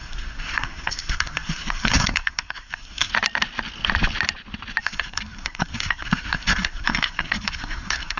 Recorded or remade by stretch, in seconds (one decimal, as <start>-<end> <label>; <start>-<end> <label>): 0.0-3.1 remade; 3.1-4.8 recorded; 4.8-8.2 remade